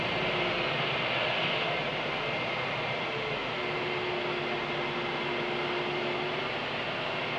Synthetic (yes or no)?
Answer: no